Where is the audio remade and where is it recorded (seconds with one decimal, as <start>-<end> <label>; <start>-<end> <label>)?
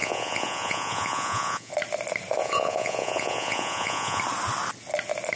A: 0.0-1.7 remade; 1.7-2.4 recorded; 2.4-4.2 remade; 4.2-5.4 recorded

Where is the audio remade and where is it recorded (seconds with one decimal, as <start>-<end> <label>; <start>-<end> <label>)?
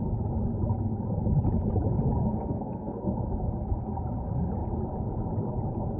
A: 0.0-2.3 recorded; 2.3-3.1 remade; 3.1-6.0 recorded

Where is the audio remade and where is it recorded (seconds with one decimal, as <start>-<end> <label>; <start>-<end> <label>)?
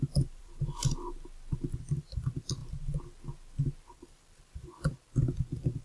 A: 0.0-0.8 remade; 0.8-1.8 recorded; 1.8-2.6 remade; 2.6-3.9 recorded; 3.9-5.8 remade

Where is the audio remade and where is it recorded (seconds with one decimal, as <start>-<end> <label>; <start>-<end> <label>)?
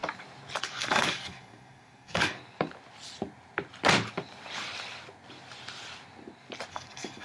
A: 0.0-0.6 recorded; 0.6-2.4 remade; 2.4-6.7 recorded; 6.7-7.2 remade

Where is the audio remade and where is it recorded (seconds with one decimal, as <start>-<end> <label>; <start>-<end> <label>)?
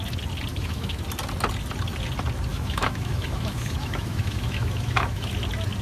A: 0.0-0.5 recorded; 0.5-1.0 remade; 1.0-2.5 recorded; 2.5-5.3 remade; 5.3-5.8 recorded